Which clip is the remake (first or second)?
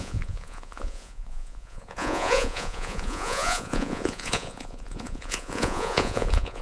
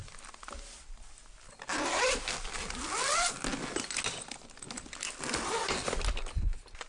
first